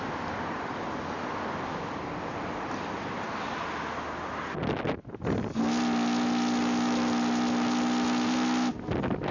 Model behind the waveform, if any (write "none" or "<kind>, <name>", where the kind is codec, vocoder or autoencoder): none